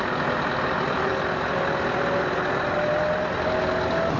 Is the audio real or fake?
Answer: real